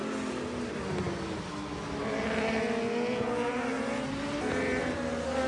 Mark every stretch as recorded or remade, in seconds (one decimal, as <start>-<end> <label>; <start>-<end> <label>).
0.0-5.5 recorded